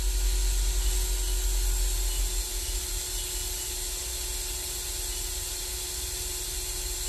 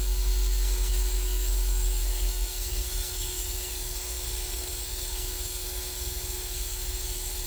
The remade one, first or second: second